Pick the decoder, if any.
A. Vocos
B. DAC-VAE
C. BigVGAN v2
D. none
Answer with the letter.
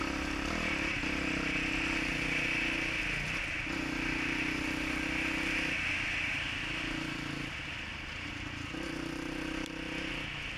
D